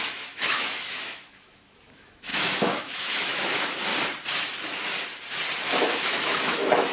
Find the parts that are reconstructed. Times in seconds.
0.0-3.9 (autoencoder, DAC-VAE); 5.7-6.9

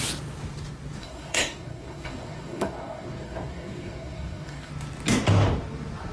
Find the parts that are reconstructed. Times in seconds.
1.0-4.7 (codec, SNAC)

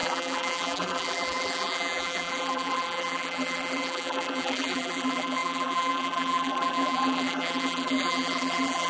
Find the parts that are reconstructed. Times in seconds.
0.0-8.9 (vocoder, BigVGAN v2)

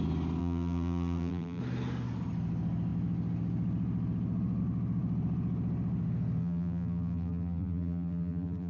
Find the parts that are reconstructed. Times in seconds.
0.4-1.6 (vocoder, BigVGAN v2); 6.4-8.7

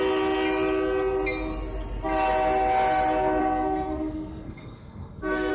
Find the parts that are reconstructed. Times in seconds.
3.4-5.5 (codec, SNAC)

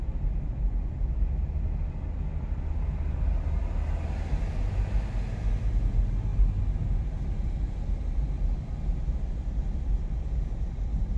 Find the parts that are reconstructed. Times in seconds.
none

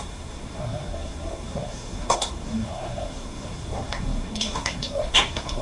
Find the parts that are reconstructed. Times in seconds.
0.0-5.6 (codec, SNAC)

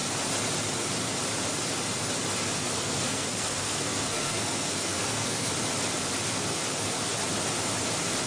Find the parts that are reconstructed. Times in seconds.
2.6-5.5 (codec, SNAC)